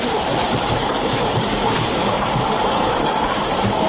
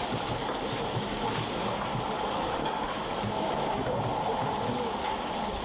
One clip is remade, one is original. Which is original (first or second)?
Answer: second